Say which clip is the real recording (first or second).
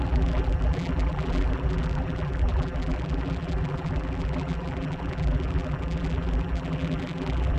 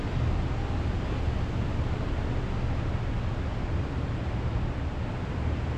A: second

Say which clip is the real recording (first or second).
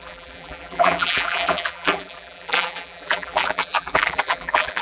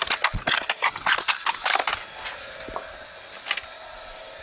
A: second